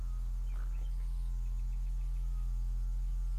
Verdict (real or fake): real